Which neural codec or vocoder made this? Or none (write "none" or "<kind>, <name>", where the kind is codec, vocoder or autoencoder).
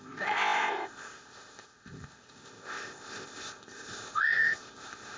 codec, ZipCodec